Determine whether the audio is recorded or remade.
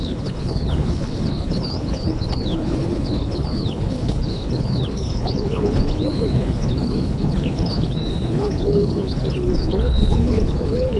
remade